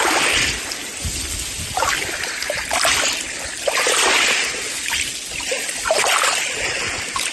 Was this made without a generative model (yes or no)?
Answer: yes